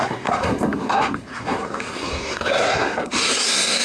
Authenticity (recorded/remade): remade